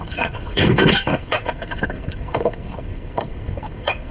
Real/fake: fake